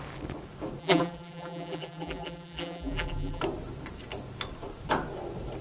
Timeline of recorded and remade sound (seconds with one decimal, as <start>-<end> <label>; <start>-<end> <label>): 0.0-0.8 recorded; 0.8-3.4 remade; 3.4-5.6 recorded